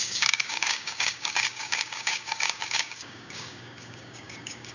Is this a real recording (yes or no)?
no